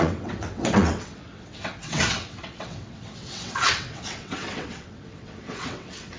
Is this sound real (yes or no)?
no